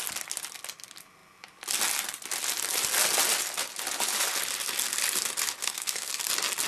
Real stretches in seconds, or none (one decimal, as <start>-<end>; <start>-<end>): 0.0-5.6; 6.1-6.7